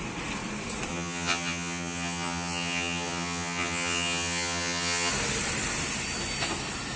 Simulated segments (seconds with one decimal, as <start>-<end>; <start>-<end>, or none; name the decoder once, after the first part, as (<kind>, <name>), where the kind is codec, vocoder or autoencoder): 0.9-5.1 (vocoder, HiFi-GAN)